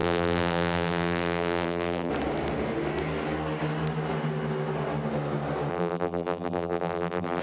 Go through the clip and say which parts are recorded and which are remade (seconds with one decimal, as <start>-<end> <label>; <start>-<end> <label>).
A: 0.0-2.1 remade; 2.1-5.7 recorded; 5.7-7.4 remade